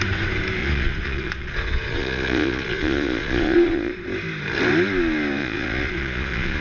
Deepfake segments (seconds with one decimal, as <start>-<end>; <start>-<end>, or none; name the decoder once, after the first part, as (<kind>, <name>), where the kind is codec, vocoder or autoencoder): 0.6-3.9 (vocoder, Vocos); 5.4-6.6